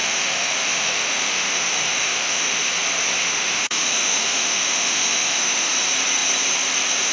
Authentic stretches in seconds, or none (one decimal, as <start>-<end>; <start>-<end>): 2.7-3.2; 5.7-7.1